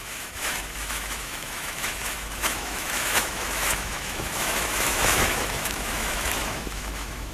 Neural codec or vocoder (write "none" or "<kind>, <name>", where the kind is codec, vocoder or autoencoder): autoencoder, DAC-VAE